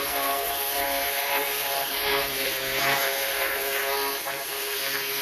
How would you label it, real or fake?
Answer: fake